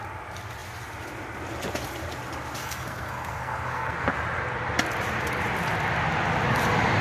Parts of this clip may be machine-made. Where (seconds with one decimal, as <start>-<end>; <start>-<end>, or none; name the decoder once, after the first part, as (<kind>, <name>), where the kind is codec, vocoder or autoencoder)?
2.6-4.1 (codec, SNAC)